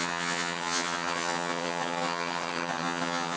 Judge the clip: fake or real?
fake